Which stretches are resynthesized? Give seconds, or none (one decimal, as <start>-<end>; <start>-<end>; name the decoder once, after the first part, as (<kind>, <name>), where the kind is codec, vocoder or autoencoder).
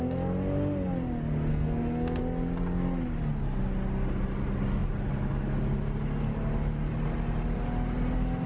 1.5-2.2 (codec, SNAC)